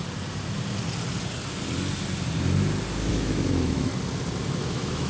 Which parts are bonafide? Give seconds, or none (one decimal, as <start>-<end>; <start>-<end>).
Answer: 0.0-3.1; 3.9-4.6